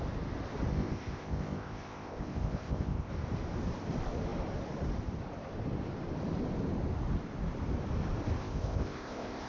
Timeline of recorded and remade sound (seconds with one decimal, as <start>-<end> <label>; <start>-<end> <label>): 0.0-0.7 recorded; 0.7-3.1 remade; 3.1-8.4 recorded; 8.4-9.5 remade